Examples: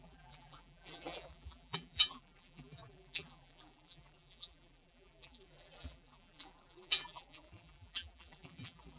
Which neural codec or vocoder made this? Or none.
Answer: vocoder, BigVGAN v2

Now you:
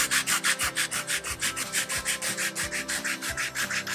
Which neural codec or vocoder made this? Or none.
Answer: vocoder, BigVGAN v2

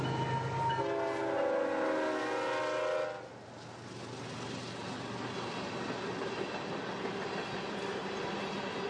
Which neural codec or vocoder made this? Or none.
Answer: none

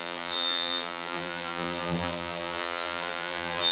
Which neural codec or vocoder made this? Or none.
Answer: vocoder, BigVGAN v2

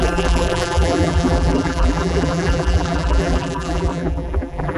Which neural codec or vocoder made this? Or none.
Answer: vocoder, BigVGAN v2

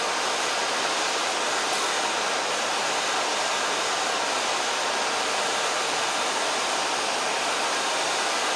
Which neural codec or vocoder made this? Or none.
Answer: none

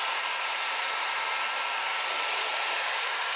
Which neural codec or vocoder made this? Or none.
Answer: vocoder, BigVGAN v2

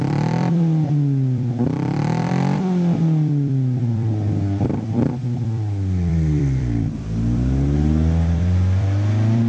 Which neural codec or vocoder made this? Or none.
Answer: vocoder, BigVGAN v2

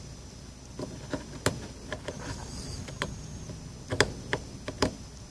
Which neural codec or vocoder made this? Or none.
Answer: none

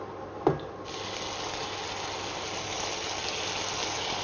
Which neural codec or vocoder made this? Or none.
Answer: none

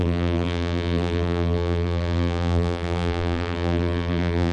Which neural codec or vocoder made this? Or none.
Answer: vocoder, BigVGAN v2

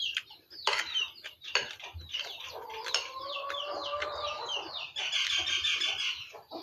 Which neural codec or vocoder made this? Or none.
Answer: vocoder, BigVGAN v2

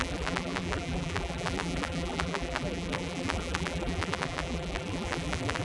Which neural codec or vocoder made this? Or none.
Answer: vocoder, BigVGAN v2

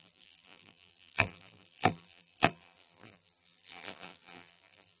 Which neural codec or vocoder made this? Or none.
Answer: vocoder, BigVGAN v2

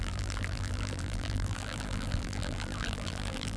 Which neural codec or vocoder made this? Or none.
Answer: vocoder, BigVGAN v2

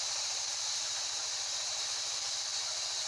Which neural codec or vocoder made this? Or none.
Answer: vocoder, BigVGAN v2